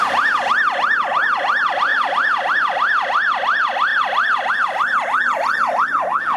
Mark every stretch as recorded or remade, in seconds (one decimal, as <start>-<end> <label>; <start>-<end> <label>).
0.0-6.4 recorded